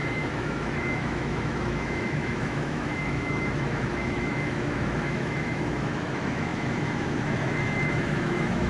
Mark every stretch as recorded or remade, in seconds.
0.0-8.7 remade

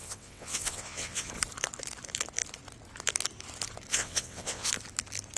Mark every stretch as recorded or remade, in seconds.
0.0-1.3 remade; 1.3-3.9 recorded; 3.9-4.7 remade; 4.7-5.4 recorded

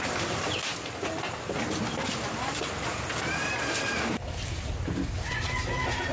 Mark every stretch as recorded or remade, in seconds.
0.0-6.1 recorded